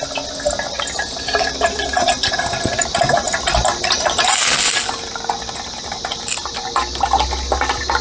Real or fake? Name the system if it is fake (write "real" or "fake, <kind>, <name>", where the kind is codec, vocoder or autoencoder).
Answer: real